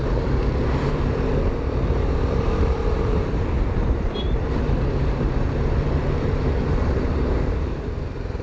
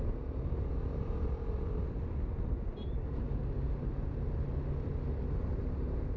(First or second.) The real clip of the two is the second